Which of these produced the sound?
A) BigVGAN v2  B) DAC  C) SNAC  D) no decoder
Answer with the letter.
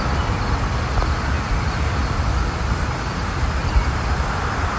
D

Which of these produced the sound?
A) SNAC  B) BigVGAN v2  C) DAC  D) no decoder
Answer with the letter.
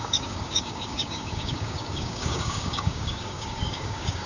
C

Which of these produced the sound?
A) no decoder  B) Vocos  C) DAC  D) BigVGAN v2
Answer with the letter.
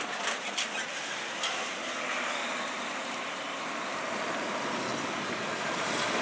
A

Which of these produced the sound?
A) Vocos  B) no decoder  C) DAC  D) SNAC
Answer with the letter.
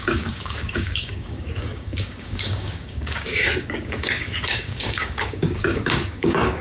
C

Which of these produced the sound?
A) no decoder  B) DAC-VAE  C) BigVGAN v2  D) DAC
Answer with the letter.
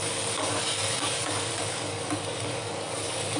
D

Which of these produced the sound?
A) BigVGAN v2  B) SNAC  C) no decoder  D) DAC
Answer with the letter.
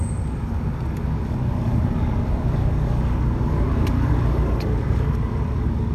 D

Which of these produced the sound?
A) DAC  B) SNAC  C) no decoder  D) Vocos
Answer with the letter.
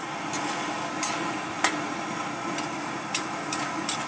C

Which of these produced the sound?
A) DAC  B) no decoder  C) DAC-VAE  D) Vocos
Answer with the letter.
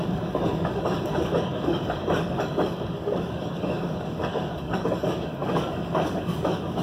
A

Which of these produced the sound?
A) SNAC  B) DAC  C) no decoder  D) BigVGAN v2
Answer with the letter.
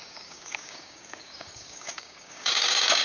B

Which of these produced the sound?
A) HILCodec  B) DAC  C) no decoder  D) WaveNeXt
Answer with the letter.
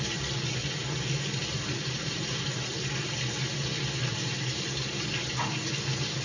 C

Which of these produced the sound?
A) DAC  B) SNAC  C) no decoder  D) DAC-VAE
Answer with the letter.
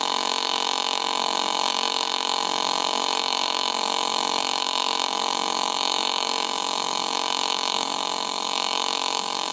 A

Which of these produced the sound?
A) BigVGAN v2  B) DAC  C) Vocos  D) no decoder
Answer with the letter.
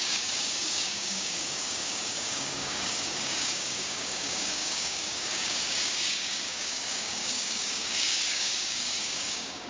B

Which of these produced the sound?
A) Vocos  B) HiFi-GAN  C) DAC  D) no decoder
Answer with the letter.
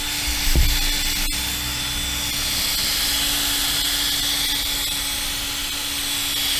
D